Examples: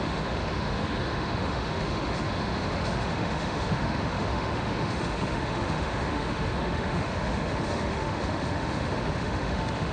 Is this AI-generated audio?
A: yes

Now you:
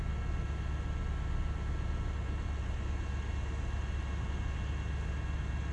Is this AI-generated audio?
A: no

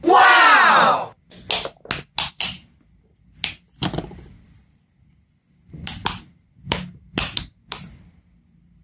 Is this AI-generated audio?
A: no